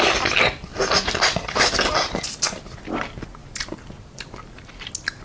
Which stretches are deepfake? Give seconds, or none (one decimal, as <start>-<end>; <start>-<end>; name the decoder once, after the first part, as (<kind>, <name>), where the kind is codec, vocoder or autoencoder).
none